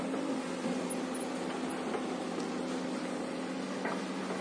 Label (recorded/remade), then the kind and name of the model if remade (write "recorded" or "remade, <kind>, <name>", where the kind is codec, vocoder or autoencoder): recorded